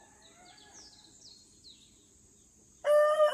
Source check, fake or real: real